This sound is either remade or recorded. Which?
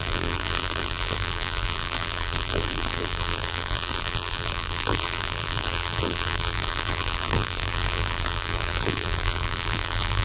remade